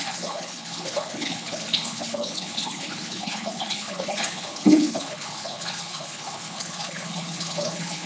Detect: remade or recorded remade